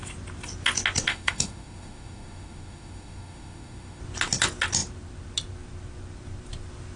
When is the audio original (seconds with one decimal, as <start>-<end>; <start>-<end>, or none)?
0.0-1.1; 4.0-7.0